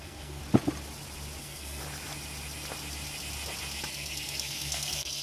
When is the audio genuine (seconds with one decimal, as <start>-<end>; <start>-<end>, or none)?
0.4-1.4; 1.8-3.9